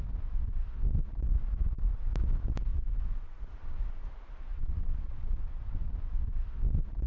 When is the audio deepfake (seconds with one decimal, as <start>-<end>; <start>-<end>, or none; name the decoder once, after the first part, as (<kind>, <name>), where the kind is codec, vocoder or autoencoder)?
2.7-3.4 (vocoder, WaveNeXt); 4.5-5.9